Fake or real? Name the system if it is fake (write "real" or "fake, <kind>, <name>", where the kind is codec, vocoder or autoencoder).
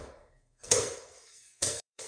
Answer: fake, codec, SNAC